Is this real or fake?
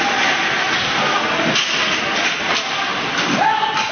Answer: real